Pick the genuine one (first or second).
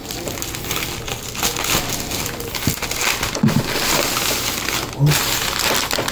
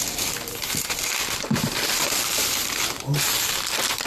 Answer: first